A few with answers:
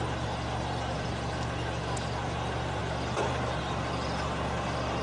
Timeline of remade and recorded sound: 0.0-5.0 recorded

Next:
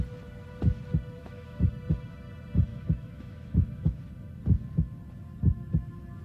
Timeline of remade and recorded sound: 0.0-1.2 recorded; 1.2-1.7 remade; 1.7-2.7 recorded; 2.7-4.0 remade; 4.0-6.2 recorded